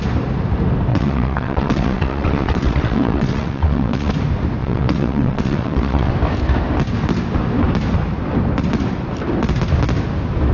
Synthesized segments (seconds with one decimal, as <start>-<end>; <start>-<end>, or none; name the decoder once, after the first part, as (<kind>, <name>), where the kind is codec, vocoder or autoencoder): 0.9-4.1 (vocoder, WaveNeXt); 4.6-6.1